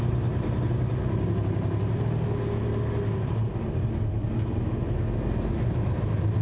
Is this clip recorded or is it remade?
recorded